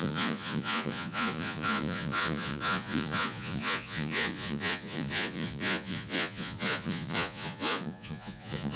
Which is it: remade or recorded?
remade